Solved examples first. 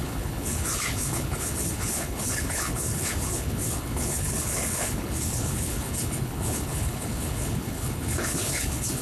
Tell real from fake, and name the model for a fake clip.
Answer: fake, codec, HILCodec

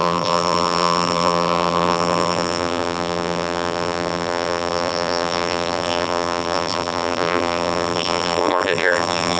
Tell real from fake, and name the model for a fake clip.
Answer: fake, vocoder, BigVGAN v2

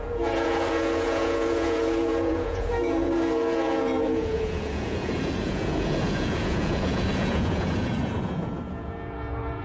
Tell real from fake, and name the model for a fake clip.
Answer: fake, vocoder, Vocos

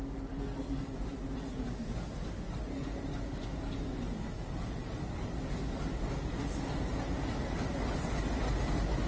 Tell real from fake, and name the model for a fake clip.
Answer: real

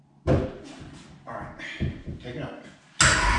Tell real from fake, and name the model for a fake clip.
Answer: real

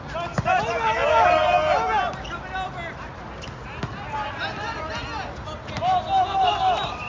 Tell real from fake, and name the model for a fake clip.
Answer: real